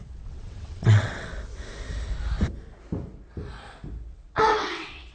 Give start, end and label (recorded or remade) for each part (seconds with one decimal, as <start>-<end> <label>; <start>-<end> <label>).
0.0-1.3 remade; 1.3-4.1 recorded; 4.1-5.1 remade